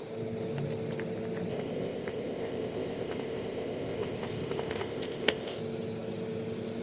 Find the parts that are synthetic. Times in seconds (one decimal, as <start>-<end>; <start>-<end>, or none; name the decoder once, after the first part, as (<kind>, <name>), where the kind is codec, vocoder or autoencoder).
1.5-5.6 (codec, ZipCodec)